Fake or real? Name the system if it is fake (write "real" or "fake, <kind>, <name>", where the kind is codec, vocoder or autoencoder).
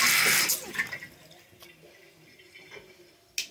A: real